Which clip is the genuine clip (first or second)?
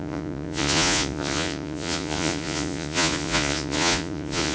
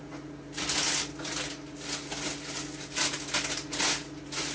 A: second